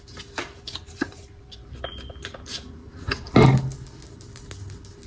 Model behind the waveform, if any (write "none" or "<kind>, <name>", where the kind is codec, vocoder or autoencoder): none